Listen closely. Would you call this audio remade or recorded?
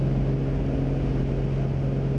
recorded